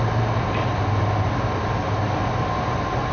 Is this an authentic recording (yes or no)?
yes